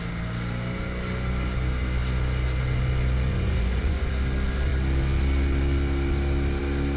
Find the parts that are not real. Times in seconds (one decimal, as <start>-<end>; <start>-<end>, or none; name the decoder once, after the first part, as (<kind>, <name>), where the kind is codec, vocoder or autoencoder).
3.3-4.1 (vocoder, Vocos)